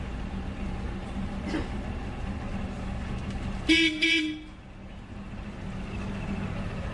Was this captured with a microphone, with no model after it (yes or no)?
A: yes